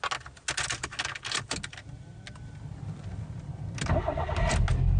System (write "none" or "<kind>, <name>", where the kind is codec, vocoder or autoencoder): none